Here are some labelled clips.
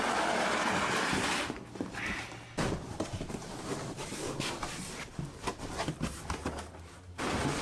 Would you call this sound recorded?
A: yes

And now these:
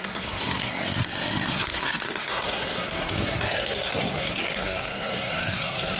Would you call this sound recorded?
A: no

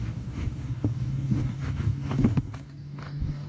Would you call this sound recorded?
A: no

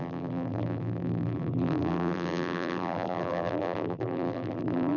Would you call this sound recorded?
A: no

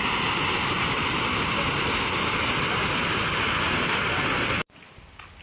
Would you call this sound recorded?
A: yes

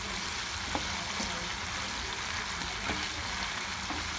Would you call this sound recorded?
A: yes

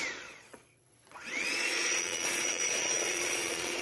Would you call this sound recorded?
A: no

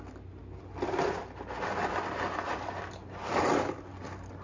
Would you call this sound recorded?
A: yes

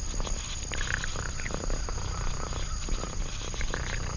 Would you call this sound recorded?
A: yes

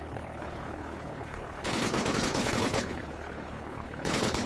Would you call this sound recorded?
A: no